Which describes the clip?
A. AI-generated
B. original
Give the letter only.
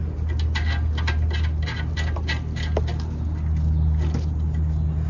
B